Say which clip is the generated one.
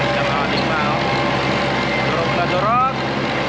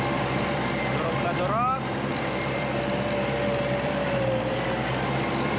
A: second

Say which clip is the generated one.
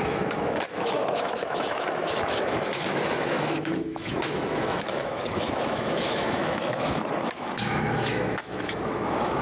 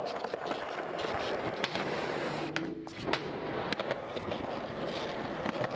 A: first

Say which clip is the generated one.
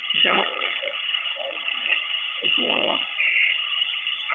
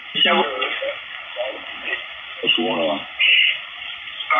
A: first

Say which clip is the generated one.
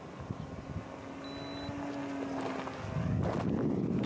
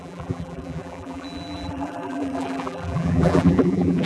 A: second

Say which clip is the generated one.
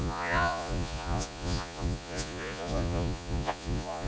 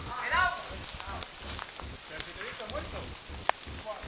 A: first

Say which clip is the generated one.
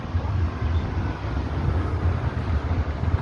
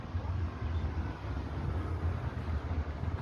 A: first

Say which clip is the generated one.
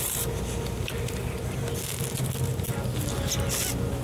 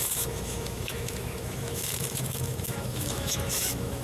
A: second